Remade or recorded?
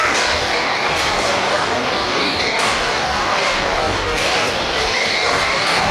remade